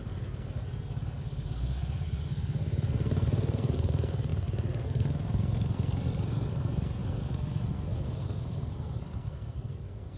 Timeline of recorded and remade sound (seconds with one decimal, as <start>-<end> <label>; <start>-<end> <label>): 0.0-10.2 remade